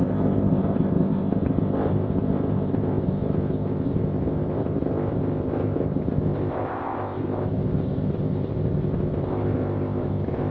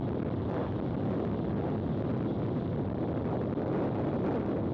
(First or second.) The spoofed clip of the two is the first